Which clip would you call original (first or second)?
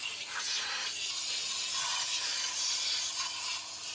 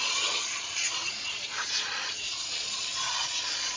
first